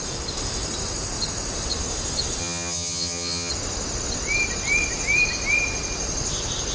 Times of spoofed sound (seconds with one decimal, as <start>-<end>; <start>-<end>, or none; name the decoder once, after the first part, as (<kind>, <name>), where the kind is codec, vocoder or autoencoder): 2.4-3.5 (vocoder, HiFi-GAN)